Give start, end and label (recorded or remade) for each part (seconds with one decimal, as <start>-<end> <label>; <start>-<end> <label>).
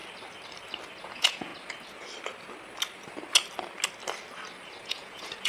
0.0-1.0 recorded; 1.0-1.5 remade; 1.5-4.8 recorded; 4.8-5.5 remade